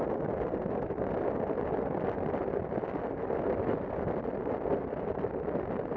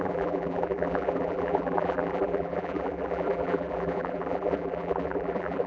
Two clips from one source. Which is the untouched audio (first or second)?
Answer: first